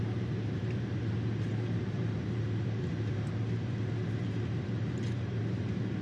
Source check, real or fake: fake